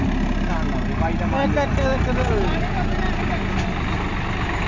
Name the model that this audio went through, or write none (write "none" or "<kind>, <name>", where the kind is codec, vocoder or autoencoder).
none